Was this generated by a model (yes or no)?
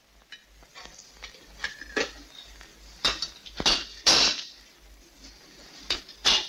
no